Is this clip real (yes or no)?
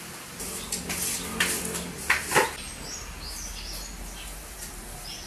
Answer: yes